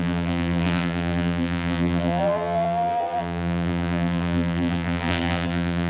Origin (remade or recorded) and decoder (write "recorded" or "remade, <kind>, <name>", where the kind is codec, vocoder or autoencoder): remade, vocoder, BigVGAN v2